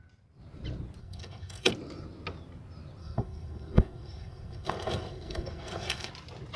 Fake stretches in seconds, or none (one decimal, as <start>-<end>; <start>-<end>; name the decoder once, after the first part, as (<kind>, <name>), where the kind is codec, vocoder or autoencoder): 1.0-1.7 (codec, SNAC); 3.0-6.1